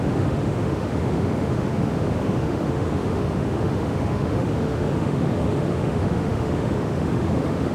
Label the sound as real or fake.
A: fake